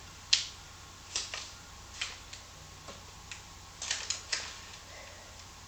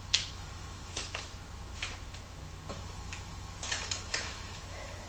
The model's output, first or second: second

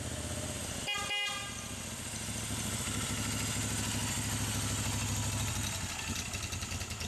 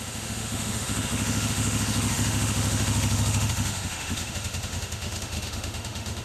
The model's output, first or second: second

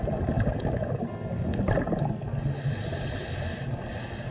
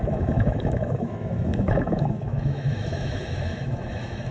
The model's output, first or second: second